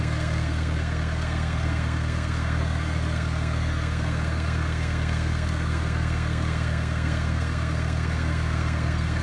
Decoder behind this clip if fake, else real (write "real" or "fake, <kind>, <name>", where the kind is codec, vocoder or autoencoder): fake, codec, SNAC